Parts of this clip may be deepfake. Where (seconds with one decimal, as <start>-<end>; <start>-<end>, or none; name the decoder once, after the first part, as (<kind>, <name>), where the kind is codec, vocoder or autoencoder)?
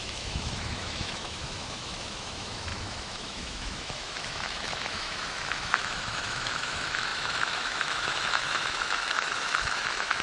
0.0-10.2 (autoencoder, DAC-VAE)